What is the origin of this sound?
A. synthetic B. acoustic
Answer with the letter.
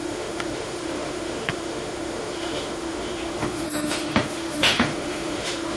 A